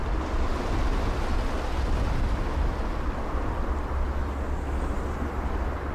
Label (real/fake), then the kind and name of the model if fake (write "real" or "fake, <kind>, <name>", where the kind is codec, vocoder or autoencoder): real